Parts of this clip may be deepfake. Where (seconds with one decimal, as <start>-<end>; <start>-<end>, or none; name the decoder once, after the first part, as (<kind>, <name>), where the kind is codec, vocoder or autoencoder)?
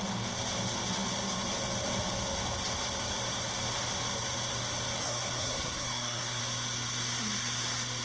5.0-6.4 (codec, SNAC)